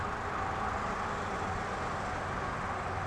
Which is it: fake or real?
real